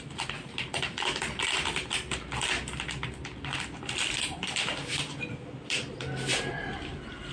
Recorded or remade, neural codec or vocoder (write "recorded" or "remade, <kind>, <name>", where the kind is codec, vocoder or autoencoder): recorded